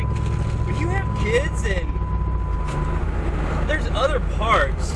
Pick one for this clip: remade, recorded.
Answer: recorded